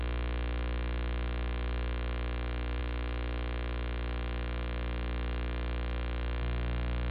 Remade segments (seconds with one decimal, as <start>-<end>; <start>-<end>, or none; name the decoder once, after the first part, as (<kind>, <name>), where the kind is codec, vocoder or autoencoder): none